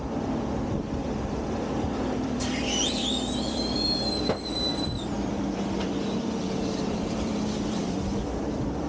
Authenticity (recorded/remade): remade